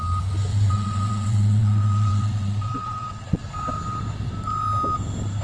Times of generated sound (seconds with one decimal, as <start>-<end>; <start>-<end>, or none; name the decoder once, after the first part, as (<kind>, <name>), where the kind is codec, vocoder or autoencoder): 0.5-3.4 (vocoder, WaveNeXt)